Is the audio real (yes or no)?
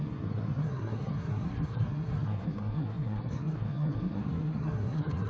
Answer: no